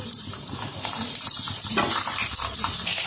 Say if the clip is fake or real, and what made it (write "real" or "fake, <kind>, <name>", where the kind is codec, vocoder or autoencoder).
fake, vocoder, BigVGAN v2